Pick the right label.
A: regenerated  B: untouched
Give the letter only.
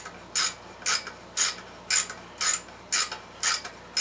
B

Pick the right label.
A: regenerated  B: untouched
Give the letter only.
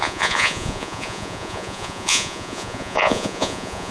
A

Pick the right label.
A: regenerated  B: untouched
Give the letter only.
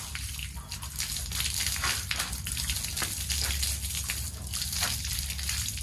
B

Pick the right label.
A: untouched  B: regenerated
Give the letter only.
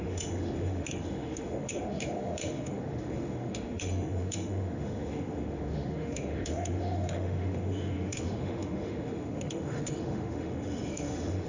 B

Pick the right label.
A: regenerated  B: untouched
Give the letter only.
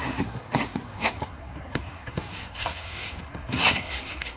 A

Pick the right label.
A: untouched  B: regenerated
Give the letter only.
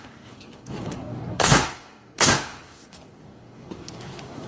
B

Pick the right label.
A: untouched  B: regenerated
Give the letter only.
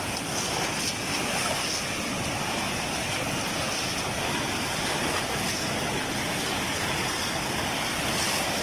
A